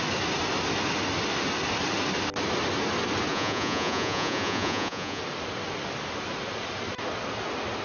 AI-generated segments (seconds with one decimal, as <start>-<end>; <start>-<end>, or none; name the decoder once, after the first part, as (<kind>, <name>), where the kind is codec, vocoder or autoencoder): 3.3-5.2 (vocoder, Vocos)